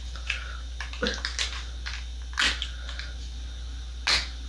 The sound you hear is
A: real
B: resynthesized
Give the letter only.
A